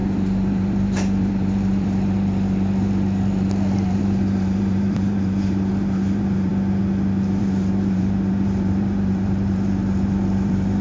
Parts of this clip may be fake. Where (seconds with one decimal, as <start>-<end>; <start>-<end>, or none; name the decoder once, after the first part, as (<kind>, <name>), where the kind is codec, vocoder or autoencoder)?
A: 0.0-6.5 (vocoder, BigVGAN v2); 7.4-10.8